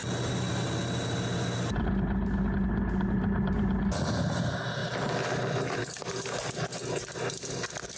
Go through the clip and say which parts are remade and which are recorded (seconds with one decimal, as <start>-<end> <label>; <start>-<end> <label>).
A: 0.0-8.0 recorded